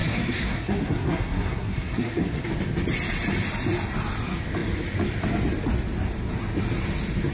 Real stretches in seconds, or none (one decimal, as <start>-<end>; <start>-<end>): 2.5-7.3